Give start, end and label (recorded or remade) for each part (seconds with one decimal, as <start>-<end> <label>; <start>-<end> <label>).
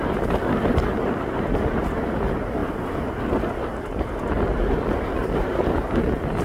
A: 0.0-6.4 recorded